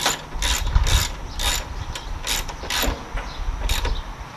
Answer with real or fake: real